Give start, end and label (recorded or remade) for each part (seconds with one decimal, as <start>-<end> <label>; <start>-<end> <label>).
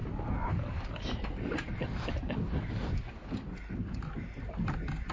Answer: 0.0-5.1 recorded